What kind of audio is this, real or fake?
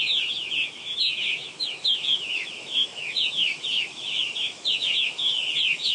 fake